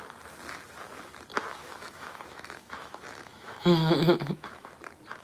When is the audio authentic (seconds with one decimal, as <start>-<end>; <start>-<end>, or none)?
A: 0.0-1.6; 4.7-5.2